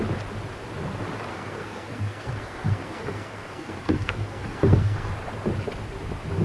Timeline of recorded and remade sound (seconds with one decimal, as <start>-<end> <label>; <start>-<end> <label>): 0.0-1.3 recorded; 1.3-5.1 remade; 5.1-6.4 recorded